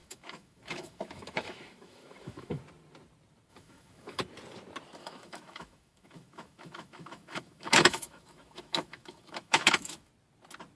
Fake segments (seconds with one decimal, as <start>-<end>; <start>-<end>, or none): 0.0-2.6; 3.5-4.2; 5.0-10.1